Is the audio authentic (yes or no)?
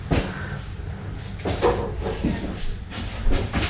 yes